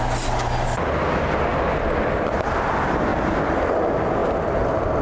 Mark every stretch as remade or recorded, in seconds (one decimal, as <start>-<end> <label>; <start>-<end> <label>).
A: 0.0-1.5 recorded; 1.5-2.7 remade; 2.7-5.0 recorded